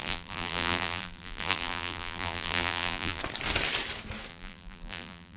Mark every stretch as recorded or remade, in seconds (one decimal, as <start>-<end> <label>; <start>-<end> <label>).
0.0-3.2 remade; 3.2-4.3 recorded; 4.3-5.4 remade